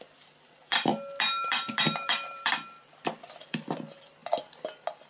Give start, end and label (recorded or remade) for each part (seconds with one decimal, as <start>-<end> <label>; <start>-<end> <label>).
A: 0.0-0.9 remade; 0.9-1.5 recorded; 1.5-4.2 remade; 4.2-5.1 recorded